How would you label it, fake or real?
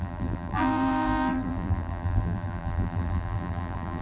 fake